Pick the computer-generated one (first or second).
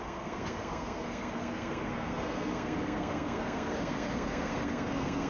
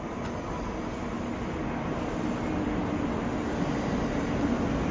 first